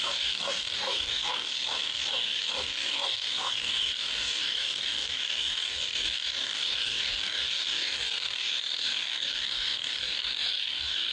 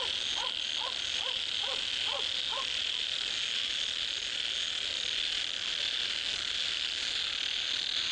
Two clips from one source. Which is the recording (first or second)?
second